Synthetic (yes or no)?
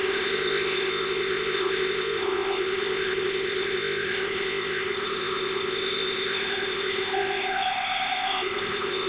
yes